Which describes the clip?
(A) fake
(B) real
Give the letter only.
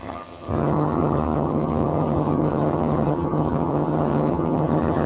A